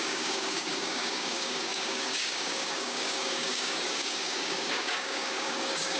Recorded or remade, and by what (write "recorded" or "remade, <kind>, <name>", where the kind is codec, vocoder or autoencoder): remade, codec, DAC